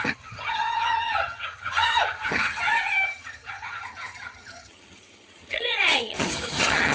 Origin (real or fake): fake